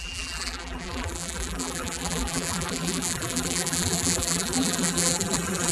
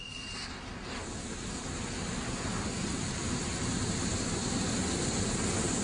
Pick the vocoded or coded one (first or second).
first